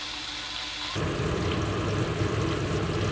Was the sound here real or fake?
real